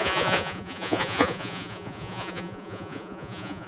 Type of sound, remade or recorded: remade